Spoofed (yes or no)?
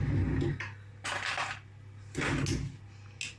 no